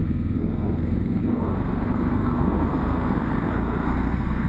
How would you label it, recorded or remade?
remade